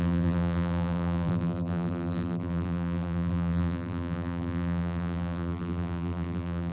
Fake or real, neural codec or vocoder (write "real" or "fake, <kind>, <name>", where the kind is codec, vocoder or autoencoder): fake, vocoder, BigVGAN v2